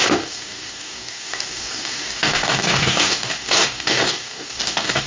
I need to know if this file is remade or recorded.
remade